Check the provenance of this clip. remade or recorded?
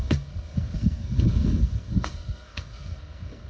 remade